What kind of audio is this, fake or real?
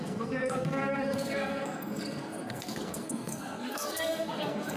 fake